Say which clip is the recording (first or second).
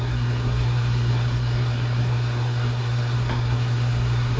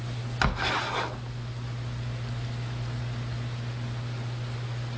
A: second